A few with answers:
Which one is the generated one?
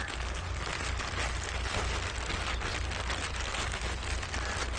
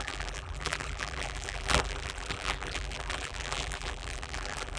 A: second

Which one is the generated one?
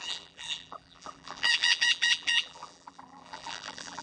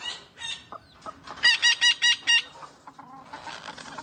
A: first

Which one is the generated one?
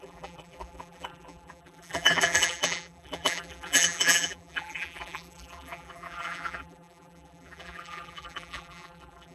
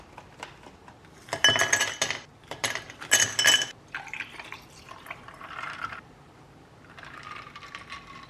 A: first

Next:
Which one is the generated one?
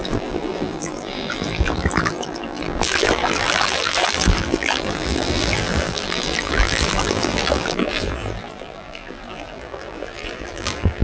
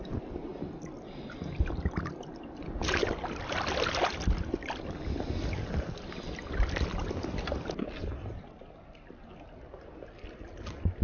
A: first